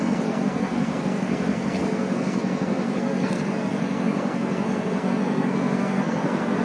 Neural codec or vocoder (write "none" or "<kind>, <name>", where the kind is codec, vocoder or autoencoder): codec, SNAC